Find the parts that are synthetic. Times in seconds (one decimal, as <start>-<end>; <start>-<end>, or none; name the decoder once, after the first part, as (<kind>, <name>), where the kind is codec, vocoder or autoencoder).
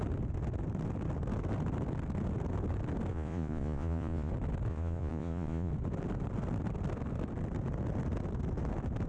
3.1-4.3 (vocoder, Vocos); 4.7-5.7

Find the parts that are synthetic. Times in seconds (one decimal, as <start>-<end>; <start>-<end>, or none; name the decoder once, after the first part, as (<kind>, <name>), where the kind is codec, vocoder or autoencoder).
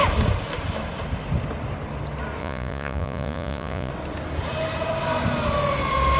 2.4-3.9 (vocoder, Vocos)